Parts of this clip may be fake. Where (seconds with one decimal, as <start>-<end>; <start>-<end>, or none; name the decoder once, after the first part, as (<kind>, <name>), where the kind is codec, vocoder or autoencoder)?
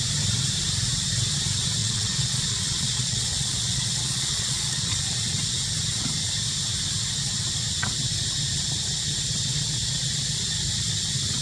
1.8-5.0 (vocoder, Vocos)